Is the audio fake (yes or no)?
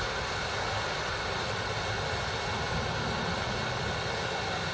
no